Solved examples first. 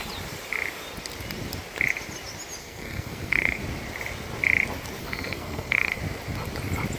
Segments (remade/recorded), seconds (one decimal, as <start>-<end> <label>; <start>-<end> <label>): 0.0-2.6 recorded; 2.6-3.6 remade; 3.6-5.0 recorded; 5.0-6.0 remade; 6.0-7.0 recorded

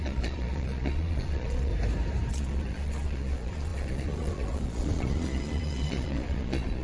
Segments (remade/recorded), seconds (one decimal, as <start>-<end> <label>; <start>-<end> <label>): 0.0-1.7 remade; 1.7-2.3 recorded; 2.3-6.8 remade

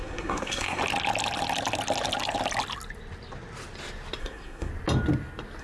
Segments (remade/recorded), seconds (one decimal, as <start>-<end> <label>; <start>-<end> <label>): 0.0-0.8 remade; 0.8-4.2 recorded; 4.2-4.7 remade; 4.7-5.6 recorded